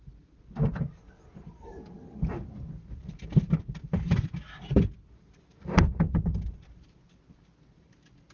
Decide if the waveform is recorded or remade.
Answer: recorded